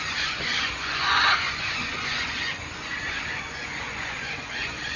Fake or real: fake